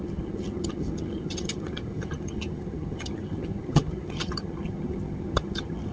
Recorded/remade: remade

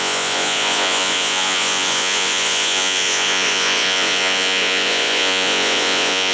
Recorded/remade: remade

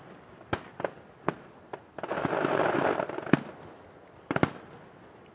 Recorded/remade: recorded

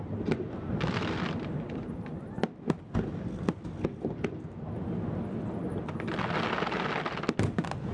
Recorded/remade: recorded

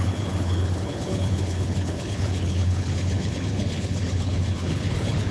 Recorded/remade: remade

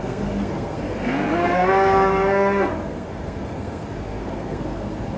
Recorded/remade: remade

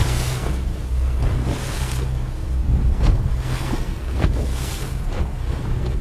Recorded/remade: remade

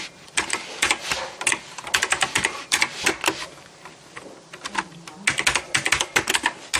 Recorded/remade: recorded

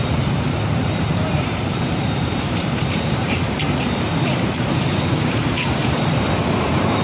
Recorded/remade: remade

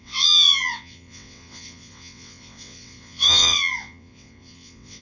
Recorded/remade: remade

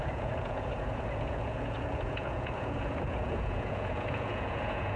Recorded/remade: remade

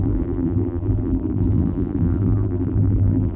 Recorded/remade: remade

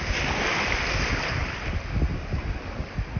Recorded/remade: recorded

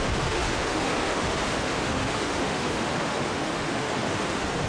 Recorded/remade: remade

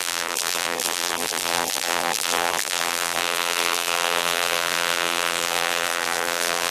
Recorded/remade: remade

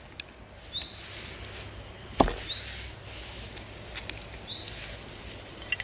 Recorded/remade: recorded